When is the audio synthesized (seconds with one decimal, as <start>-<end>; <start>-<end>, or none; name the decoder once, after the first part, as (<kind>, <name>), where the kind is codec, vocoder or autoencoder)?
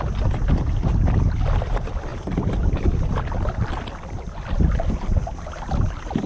none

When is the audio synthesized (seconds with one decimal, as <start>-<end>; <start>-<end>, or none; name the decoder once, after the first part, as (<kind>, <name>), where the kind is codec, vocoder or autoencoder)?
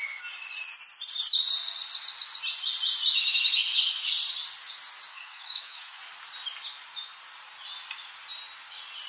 5.1-6.0 (autoencoder, DAC-VAE)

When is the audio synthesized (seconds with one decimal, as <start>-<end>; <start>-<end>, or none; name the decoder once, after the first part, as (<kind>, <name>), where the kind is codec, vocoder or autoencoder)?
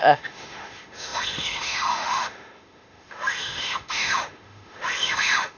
0.0-5.6 (autoencoder, DAC-VAE)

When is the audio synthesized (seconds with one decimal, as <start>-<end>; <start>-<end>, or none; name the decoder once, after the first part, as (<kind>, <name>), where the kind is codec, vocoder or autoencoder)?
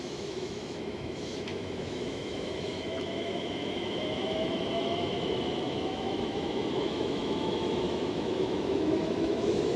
0.0-9.8 (autoencoder, DAC-VAE)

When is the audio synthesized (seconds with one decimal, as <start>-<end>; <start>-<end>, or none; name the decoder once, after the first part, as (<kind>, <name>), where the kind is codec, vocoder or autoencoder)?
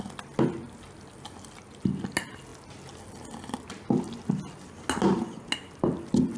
none